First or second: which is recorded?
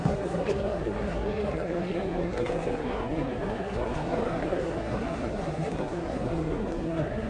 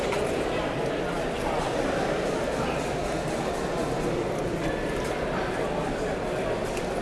second